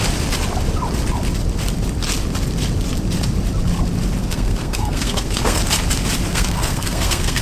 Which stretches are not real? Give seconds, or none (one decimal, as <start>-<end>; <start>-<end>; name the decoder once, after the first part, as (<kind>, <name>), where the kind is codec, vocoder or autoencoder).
4.2-5.6 (codec, SNAC); 6.3-7.4